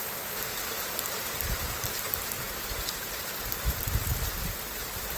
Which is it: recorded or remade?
remade